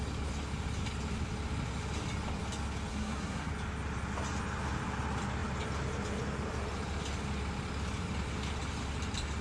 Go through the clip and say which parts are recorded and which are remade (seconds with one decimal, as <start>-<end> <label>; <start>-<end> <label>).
0.0-2.9 recorded; 2.9-3.5 remade; 3.5-9.4 recorded